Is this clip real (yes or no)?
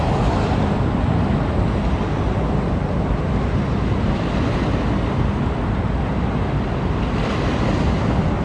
yes